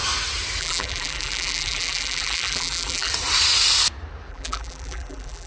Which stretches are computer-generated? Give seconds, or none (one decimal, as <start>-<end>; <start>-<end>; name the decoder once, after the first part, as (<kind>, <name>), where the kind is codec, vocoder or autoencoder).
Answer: 0.6-3.1 (vocoder, BigVGAN v2); 4.3-5.5